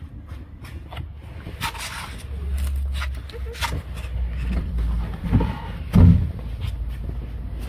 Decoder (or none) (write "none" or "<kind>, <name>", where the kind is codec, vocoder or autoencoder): none